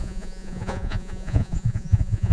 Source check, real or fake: fake